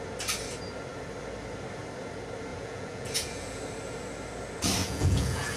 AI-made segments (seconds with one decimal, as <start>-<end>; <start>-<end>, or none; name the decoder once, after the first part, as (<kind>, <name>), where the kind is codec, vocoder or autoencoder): 2.5-3.6 (vocoder, Vocos); 4.8-5.6